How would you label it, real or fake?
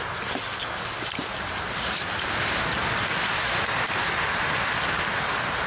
real